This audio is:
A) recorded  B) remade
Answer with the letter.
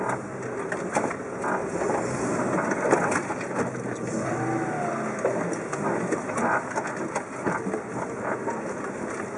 A